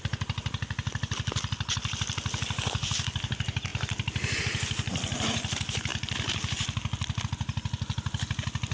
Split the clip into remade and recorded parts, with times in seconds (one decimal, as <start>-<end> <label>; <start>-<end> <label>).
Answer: 0.0-8.7 recorded